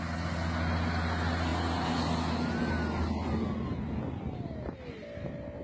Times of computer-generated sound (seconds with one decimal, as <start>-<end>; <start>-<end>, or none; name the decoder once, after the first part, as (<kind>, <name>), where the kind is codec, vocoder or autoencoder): none